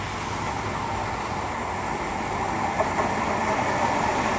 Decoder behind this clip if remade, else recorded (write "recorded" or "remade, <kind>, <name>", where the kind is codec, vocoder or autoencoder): recorded